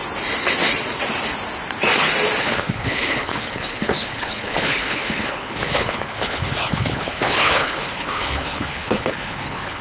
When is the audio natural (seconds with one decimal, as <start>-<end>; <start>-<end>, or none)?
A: 0.0-2.4